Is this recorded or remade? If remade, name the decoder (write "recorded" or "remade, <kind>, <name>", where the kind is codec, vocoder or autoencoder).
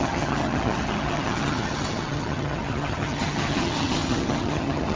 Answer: remade, vocoder, HiFi-GAN